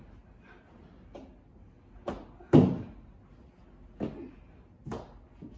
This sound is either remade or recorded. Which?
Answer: recorded